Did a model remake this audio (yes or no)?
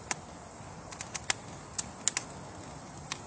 no